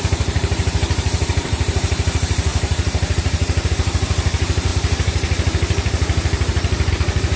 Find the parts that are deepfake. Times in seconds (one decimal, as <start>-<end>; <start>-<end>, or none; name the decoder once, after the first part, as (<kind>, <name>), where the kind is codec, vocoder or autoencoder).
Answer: 0.0-7.4 (vocoder, BigVGAN v2)